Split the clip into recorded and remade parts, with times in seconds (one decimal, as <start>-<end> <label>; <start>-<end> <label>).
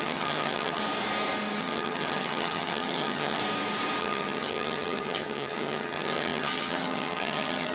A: 0.0-0.8 remade; 0.8-1.6 recorded; 1.6-3.4 remade; 3.4-4.0 recorded; 4.0-7.7 remade